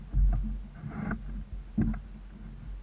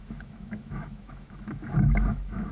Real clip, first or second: first